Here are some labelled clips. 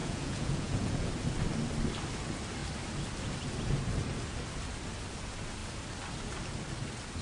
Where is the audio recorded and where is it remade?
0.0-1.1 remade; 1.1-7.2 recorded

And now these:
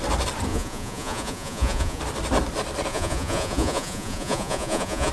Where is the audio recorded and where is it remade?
0.0-0.5 recorded; 0.5-2.0 remade; 2.0-2.9 recorded; 2.9-5.1 remade

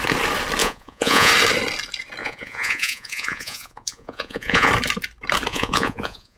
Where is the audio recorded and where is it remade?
0.0-0.6 recorded; 0.6-1.3 remade; 1.3-2.2 recorded; 2.2-4.7 remade; 4.7-5.5 recorded; 5.5-6.4 remade

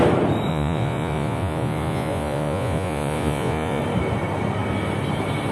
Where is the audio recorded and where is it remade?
0.0-0.5 recorded; 0.5-3.8 remade; 3.8-5.5 recorded